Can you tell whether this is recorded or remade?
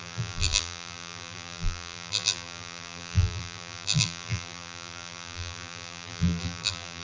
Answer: remade